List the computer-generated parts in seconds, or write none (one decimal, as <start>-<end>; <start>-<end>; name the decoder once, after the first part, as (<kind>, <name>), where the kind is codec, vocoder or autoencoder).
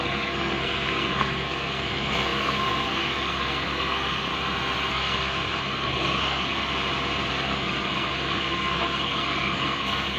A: 0.0-4.3 (codec, SNAC); 4.9-6.7; 7.3-10.2